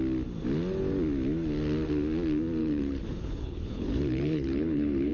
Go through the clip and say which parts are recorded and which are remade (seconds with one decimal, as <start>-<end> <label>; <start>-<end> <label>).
0.0-2.6 recorded; 2.6-5.1 remade